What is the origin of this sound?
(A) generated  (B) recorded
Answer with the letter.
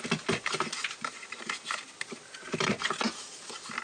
B